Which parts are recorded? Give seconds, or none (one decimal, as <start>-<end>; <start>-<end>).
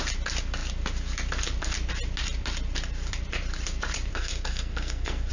0.0-4.1